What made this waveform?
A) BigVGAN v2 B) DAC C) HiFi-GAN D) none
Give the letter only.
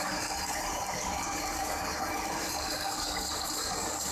B